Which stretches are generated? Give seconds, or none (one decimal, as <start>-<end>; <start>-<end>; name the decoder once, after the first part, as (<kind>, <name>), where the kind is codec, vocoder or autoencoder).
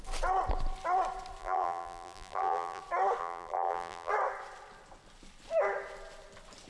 1.4-2.8 (vocoder, BigVGAN v2); 3.2-4.1